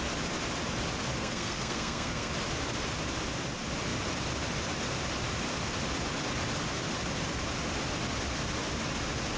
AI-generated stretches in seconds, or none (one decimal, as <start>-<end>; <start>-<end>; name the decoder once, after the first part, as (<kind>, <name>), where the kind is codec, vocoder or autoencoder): 1.2-2.3 (codec, SNAC)